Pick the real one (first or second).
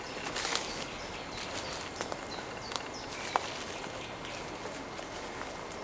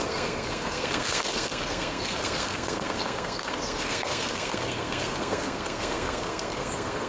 first